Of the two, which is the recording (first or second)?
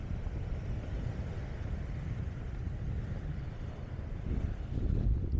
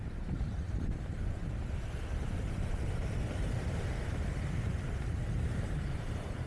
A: first